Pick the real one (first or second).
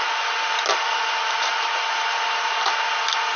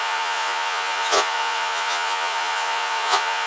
first